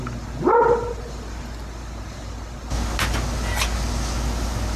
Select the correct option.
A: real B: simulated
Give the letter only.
A